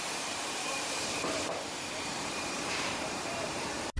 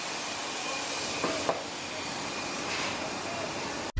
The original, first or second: second